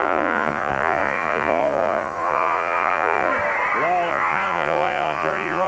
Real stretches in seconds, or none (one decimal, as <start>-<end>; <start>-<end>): 3.3-4.1